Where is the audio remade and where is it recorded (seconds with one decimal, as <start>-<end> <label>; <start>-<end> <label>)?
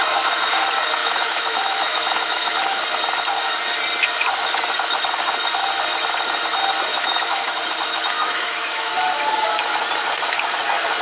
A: 0.0-1.0 recorded; 1.0-2.8 remade; 2.8-6.9 recorded; 6.9-7.6 remade; 7.6-8.2 recorded; 8.2-8.9 remade; 8.9-11.0 recorded